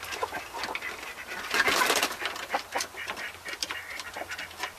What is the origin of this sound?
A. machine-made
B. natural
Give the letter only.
A